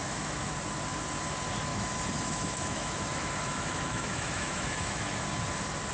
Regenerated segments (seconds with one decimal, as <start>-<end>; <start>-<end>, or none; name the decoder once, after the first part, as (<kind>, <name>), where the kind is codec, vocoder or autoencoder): 0.0-0.5 (autoencoder, DAC-VAE); 1.7-5.2